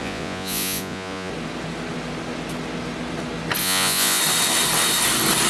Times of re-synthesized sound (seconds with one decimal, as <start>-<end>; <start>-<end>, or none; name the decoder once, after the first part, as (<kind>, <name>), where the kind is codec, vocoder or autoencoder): 0.0-1.3 (vocoder, Vocos); 3.6-4.2